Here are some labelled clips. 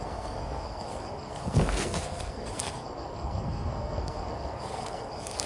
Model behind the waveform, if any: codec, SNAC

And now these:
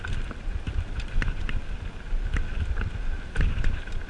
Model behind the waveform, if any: none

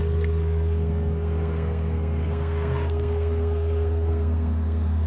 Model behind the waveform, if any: codec, SNAC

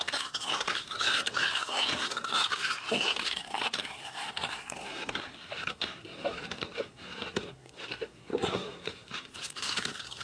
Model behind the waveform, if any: codec, SNAC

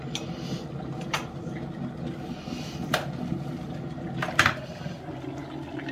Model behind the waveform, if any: none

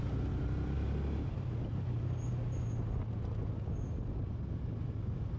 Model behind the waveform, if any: none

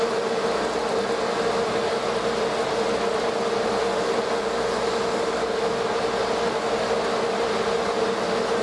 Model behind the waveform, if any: none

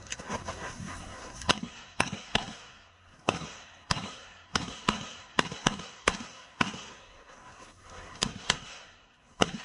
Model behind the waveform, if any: codec, SNAC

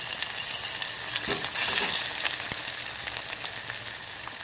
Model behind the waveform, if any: none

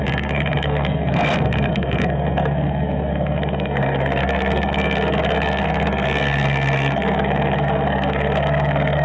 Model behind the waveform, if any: codec, SNAC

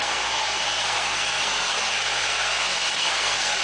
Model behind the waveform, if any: codec, SNAC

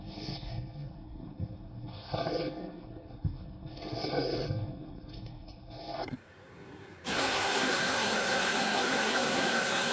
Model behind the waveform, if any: codec, SNAC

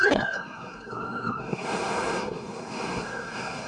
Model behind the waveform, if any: codec, SNAC